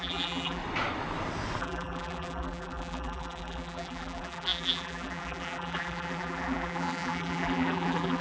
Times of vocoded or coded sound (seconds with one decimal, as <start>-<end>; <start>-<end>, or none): 0.0-0.6; 1.6-8.2